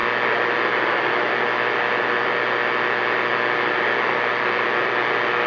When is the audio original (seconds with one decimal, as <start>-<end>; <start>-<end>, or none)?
0.0-5.5